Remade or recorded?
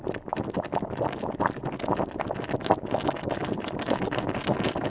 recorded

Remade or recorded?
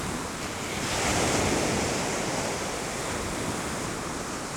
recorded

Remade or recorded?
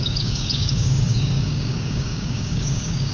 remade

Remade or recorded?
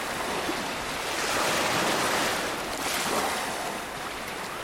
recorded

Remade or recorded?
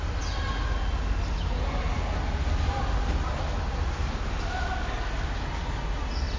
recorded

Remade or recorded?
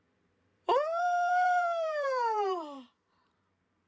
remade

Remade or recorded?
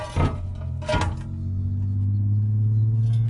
recorded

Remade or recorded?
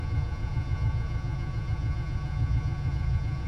remade